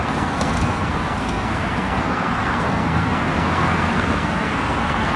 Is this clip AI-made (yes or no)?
yes